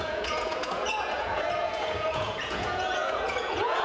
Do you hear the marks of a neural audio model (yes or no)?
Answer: yes